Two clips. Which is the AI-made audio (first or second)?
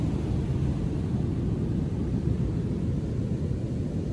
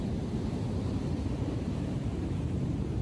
second